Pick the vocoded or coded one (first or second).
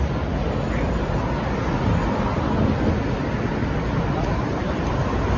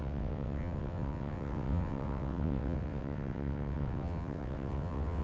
second